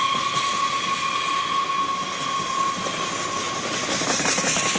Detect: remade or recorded recorded